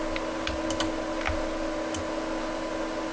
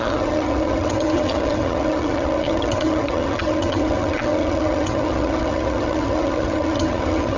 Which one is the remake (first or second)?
second